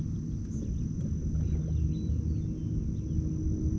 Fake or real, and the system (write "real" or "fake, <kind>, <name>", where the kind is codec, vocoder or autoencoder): real